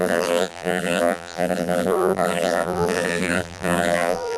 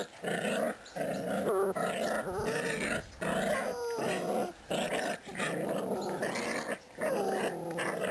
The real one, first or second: second